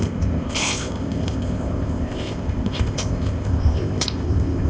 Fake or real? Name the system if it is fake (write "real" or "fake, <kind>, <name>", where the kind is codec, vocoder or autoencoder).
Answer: fake, codec, ZipCodec